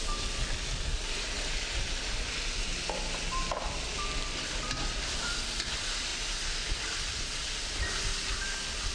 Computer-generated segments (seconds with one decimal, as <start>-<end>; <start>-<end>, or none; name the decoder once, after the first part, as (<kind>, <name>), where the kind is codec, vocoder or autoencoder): 0.0-8.9 (vocoder, BigVGAN v2)